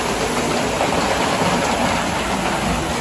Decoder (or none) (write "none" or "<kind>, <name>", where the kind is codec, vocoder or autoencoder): none